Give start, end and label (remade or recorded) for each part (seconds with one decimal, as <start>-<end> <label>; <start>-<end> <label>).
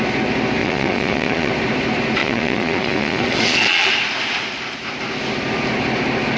0.0-0.6 recorded; 0.6-1.5 remade; 1.5-2.2 recorded; 2.2-3.9 remade; 3.9-6.4 recorded